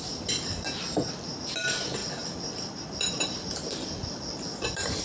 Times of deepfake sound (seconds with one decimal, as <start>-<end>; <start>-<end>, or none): 2.0-5.0